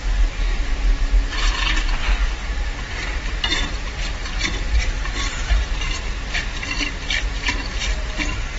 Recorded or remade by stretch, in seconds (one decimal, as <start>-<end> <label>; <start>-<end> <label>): 0.0-4.2 recorded; 4.2-5.4 remade; 5.4-8.6 recorded